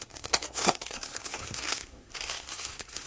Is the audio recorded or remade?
remade